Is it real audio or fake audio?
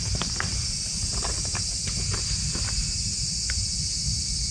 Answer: real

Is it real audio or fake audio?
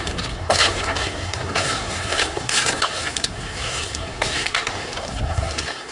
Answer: fake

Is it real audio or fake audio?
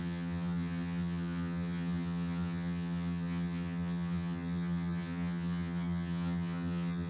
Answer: fake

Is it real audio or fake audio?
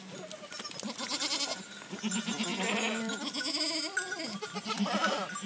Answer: real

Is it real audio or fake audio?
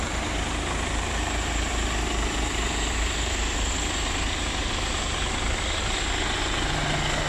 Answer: real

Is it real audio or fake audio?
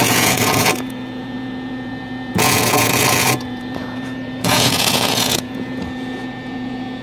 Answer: fake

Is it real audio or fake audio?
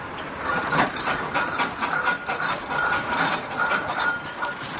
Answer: real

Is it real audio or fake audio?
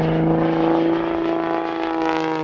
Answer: real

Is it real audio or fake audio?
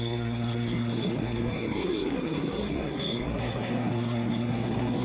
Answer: fake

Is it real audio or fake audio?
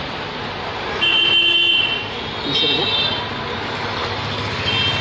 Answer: real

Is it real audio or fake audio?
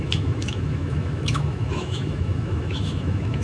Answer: fake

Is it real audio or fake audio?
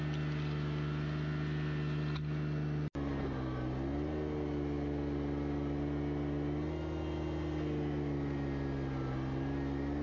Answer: real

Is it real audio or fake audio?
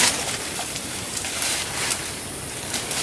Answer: real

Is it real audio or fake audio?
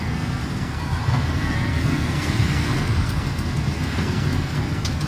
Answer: fake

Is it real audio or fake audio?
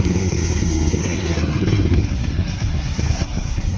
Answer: fake